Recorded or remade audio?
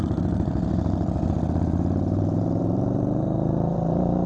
remade